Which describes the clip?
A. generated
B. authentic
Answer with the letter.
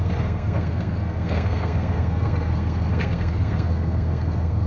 A